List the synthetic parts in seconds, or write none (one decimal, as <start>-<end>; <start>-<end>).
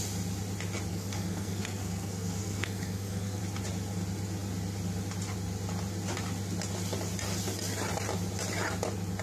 0.9-3.4